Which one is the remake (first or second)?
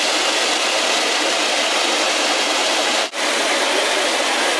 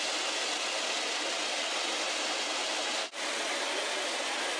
first